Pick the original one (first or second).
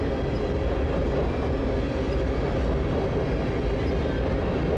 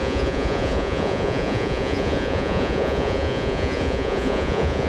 first